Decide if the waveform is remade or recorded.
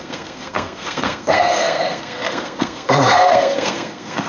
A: remade